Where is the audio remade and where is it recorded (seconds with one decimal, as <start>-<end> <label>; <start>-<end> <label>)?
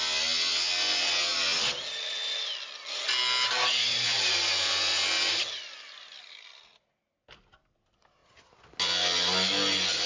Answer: 0.0-10.1 recorded